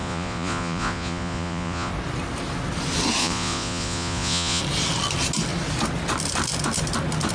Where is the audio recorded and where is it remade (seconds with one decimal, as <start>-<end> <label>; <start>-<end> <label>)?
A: 0.0-1.9 remade; 1.9-3.2 recorded; 3.2-4.6 remade; 4.6-7.3 recorded